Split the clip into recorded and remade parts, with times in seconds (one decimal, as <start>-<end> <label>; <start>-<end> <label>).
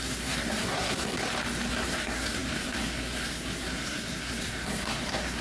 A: 0.0-1.2 remade; 1.2-1.7 recorded; 1.7-5.4 remade